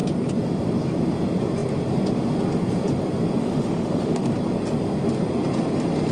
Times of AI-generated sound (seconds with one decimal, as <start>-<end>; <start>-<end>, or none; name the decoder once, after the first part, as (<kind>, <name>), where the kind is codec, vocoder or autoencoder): 3.4-4.3 (autoencoder, DAC-VAE)